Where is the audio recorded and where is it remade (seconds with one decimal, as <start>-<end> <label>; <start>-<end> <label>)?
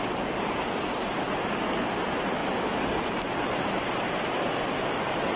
0.0-5.4 recorded